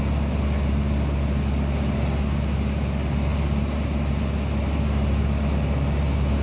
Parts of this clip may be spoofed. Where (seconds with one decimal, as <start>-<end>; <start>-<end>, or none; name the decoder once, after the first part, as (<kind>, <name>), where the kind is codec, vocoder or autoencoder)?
none